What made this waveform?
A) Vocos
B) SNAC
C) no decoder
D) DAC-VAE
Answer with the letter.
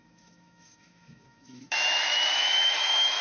D